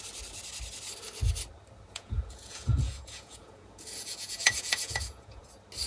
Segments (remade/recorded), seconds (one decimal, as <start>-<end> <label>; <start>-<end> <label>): 0.0-1.9 recorded; 1.9-5.4 remade; 5.4-5.9 recorded